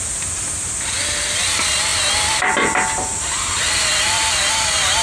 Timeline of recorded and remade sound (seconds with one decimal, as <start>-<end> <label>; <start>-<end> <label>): 0.0-5.0 recorded